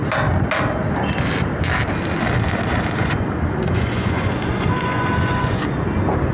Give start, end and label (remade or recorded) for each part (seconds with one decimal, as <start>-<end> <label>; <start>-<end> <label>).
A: 0.0-3.0 recorded; 3.0-5.7 remade; 5.7-6.3 recorded